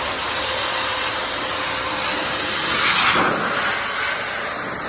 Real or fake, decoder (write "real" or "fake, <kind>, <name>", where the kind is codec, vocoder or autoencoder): real